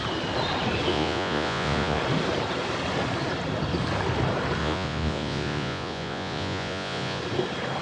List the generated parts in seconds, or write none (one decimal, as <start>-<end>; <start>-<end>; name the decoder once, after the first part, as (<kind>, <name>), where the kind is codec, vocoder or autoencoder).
0.9-2.0 (vocoder, Vocos); 4.6-7.2